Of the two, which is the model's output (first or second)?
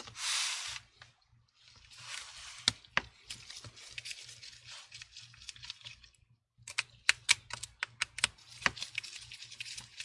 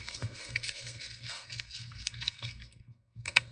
second